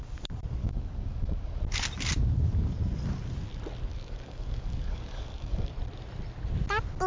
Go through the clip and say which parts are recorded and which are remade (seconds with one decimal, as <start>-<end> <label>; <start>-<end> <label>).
0.0-0.6 recorded; 0.6-1.6 remade; 1.6-3.9 recorded; 3.9-5.7 remade; 5.7-7.1 recorded